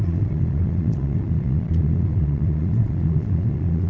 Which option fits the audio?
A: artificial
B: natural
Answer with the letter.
A